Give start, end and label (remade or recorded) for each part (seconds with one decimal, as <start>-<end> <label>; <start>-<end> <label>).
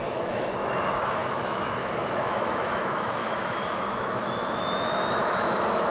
0.0-5.9 remade